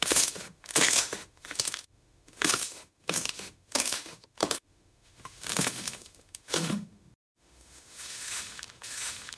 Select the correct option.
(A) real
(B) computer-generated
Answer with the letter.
B